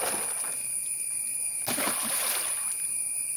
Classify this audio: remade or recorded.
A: recorded